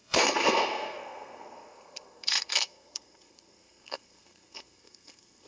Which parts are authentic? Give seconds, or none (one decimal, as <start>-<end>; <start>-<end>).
none